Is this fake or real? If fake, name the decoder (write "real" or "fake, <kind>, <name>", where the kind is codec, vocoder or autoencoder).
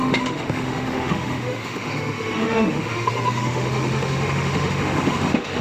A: fake, autoencoder, DAC-VAE